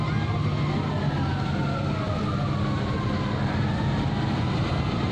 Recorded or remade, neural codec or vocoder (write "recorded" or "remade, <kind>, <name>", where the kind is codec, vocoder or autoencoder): recorded